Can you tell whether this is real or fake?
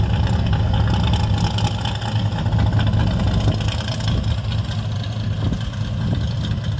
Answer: real